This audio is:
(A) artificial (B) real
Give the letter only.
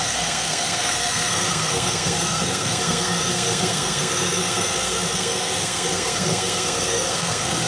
A